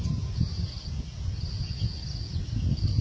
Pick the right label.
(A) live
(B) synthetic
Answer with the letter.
A